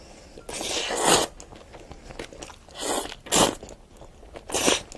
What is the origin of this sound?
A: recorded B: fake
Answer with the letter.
A